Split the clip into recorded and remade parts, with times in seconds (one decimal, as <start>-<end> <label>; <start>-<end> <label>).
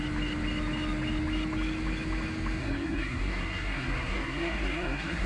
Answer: 0.0-2.6 recorded; 2.6-5.3 remade